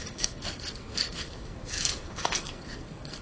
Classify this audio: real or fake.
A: fake